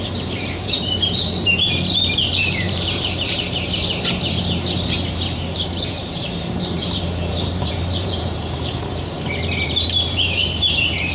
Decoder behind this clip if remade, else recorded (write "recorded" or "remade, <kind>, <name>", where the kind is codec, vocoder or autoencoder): remade, vocoder, BigVGAN v2